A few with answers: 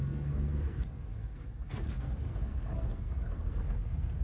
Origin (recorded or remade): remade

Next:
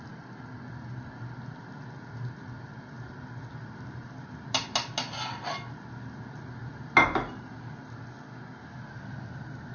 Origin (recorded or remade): recorded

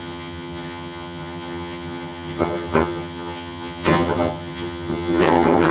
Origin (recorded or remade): remade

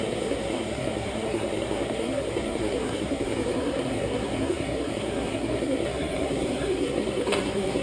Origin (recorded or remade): remade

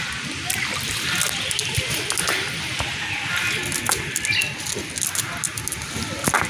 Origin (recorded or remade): recorded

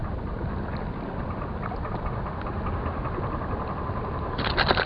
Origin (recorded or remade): recorded